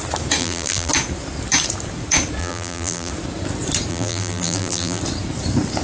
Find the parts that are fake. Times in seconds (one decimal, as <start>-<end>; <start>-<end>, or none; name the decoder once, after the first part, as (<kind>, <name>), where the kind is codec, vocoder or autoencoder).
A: 0.4-0.9 (vocoder, BigVGAN v2); 2.4-3.1; 3.9-5.0